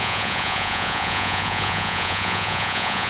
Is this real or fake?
fake